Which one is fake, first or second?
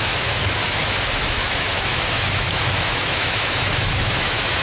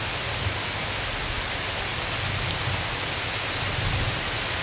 first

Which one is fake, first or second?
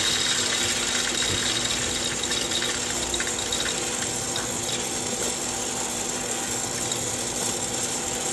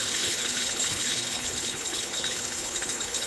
second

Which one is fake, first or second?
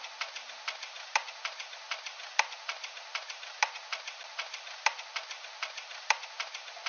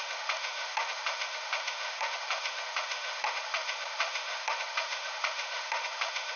second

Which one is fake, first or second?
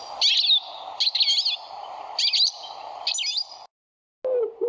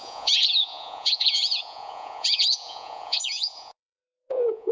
second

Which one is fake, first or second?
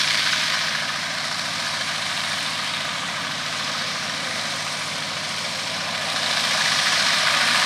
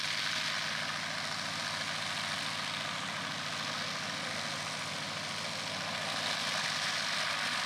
first